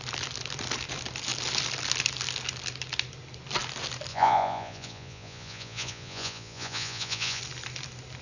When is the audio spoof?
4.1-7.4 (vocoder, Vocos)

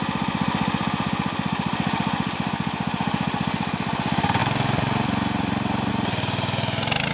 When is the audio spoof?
none